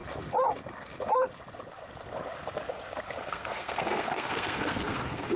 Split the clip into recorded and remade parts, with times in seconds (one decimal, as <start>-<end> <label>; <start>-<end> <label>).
0.0-3.2 recorded; 3.2-5.4 remade